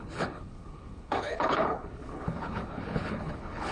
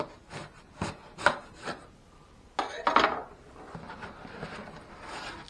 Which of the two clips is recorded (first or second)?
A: second